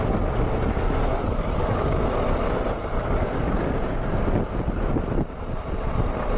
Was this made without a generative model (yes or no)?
yes